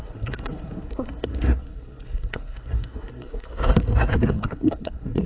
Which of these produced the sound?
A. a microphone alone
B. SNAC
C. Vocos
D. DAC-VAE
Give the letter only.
B